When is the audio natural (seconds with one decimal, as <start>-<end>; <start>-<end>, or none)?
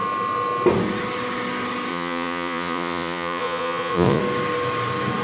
0.0-1.9; 4.2-5.2